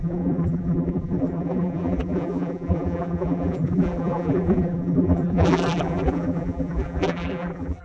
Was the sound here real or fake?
fake